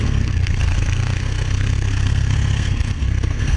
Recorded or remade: remade